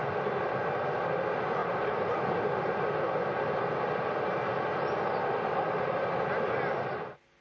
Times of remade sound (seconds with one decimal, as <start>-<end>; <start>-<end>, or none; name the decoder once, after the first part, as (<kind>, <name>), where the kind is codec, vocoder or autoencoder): 1.6-2.2 (vocoder, BigVGAN v2)